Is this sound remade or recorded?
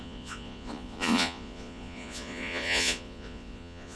remade